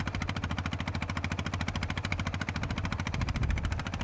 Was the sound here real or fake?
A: fake